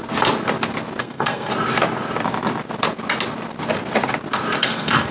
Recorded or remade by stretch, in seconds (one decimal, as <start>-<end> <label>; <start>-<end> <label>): 0.0-1.0 recorded; 1.0-1.5 remade; 1.5-4.6 recorded; 4.6-5.1 remade